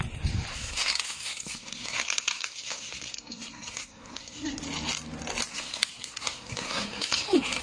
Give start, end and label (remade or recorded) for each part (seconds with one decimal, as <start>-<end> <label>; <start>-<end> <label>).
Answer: 0.0-0.5 recorded; 0.5-4.6 remade; 4.6-5.5 recorded; 5.5-7.6 remade